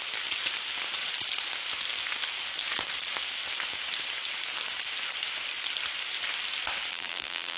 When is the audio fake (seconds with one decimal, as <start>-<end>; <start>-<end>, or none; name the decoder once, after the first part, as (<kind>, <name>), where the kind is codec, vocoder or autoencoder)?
6.9-7.6 (vocoder, BigVGAN v2)